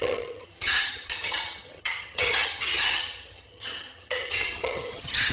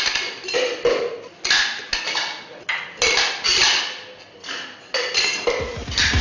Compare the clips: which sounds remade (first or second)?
first